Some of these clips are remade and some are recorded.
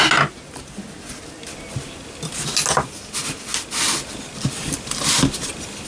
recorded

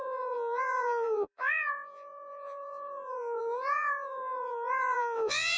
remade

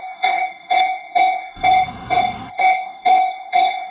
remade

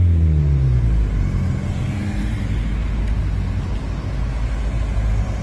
recorded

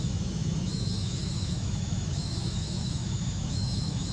remade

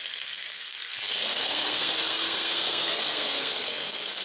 remade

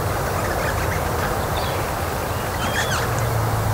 recorded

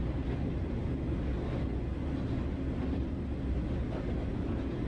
recorded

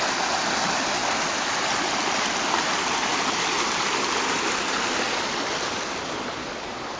recorded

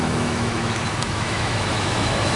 remade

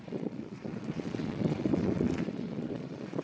remade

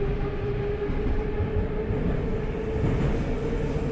recorded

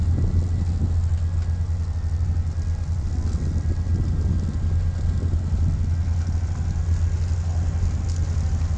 recorded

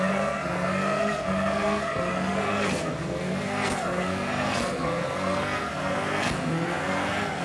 remade